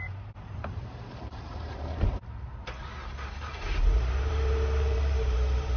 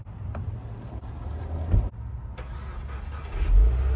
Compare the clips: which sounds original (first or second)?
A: second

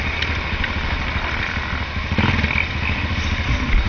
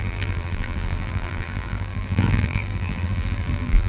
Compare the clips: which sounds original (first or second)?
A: first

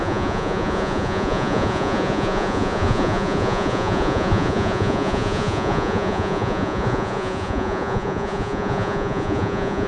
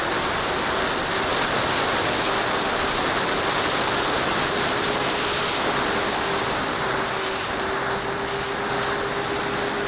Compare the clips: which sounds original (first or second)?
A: second